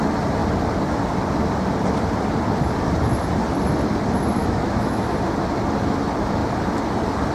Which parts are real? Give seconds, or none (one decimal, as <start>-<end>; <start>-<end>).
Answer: 0.0-4.4; 5.0-7.3